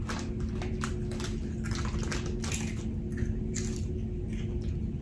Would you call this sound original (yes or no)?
yes